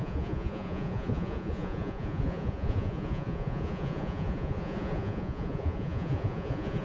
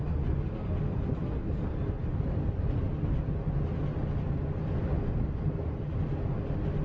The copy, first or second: first